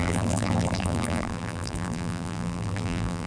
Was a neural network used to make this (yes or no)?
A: yes